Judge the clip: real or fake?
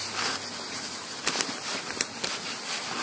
real